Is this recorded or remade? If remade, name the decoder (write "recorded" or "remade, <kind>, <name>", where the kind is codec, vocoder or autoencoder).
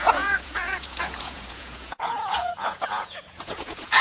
remade, vocoder, Vocos